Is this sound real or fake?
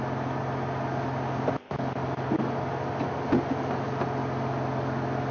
real